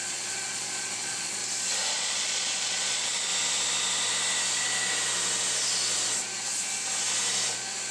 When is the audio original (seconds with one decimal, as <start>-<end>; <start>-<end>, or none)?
1.4-1.9; 3.3-7.9

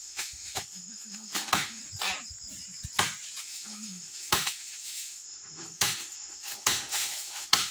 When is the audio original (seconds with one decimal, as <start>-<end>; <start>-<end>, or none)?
1.8-3.4

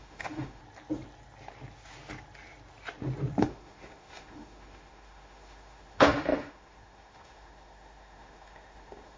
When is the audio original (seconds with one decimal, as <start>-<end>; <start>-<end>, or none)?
0.6-3.4

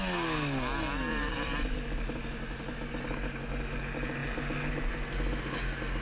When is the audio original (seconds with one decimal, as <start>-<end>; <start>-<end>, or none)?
0.0-1.1; 3.0-6.0

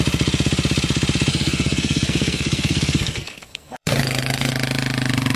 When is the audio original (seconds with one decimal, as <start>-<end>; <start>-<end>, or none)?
0.0-1.3; 4.5-5.4